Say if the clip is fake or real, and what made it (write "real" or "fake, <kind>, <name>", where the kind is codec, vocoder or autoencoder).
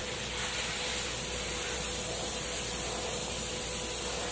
real